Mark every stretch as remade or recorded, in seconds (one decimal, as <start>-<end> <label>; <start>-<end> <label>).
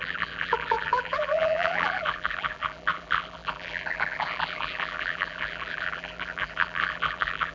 0.0-7.5 remade